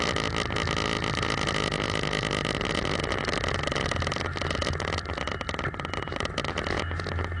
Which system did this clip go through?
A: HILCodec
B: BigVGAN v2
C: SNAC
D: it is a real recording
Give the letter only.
D